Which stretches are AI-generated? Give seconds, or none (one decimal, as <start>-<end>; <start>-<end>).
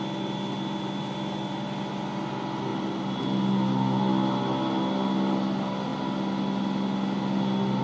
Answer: none